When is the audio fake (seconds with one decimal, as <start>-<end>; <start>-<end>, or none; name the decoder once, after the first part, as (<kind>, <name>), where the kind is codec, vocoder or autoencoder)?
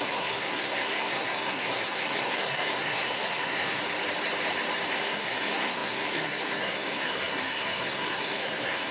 0.0-3.8 (codec, SNAC); 4.9-8.9